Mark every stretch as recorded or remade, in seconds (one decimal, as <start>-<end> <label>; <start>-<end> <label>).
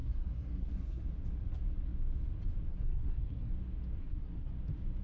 0.0-1.0 remade; 1.0-2.7 recorded; 2.7-3.5 remade; 3.5-4.0 recorded; 4.0-4.5 remade; 4.5-5.0 recorded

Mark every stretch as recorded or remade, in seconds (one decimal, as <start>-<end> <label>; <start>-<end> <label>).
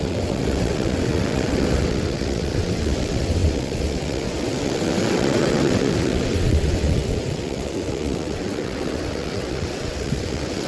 0.0-10.7 remade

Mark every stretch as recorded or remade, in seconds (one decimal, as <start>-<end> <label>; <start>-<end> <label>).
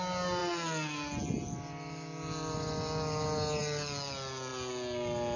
0.0-5.4 recorded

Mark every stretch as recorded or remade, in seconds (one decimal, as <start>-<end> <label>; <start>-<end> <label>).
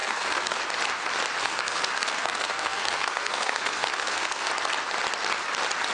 0.0-0.6 remade; 0.6-1.4 recorded; 1.4-4.5 remade; 4.5-5.9 recorded